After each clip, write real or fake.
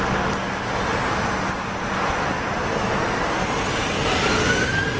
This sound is real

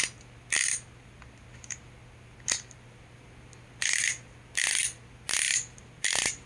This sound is real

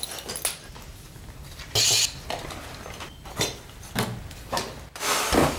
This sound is real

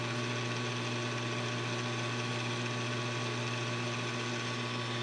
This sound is real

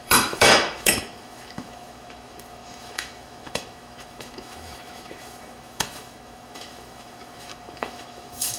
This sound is fake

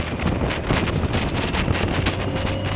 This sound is real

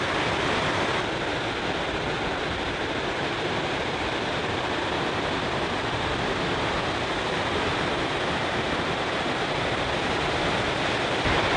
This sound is real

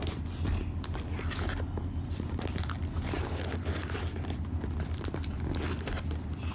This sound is real